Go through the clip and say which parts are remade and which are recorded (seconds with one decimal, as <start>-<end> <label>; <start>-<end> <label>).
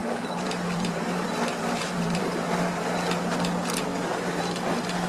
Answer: 0.0-2.2 remade; 2.2-5.1 recorded